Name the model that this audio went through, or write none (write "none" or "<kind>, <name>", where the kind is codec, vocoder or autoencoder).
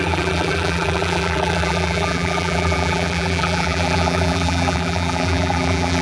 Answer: vocoder, BigVGAN v2